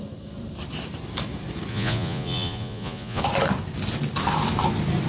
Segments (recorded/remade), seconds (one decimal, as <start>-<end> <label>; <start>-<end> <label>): 0.0-1.7 recorded; 1.7-3.2 remade; 3.2-5.1 recorded